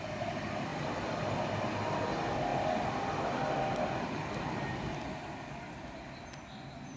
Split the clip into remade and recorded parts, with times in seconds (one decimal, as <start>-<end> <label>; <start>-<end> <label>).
0.0-7.0 recorded